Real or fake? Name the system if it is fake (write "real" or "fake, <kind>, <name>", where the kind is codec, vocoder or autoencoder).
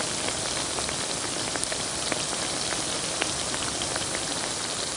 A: real